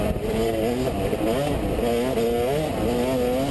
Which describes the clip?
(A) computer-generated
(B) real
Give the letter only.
B